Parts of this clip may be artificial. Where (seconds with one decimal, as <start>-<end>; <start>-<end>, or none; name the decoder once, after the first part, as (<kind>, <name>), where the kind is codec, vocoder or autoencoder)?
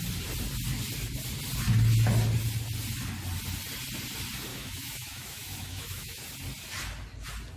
4.5-6.2 (autoencoder, DAC-VAE)